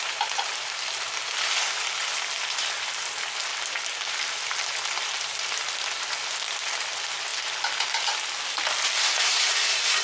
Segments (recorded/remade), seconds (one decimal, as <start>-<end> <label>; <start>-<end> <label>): 0.0-10.0 recorded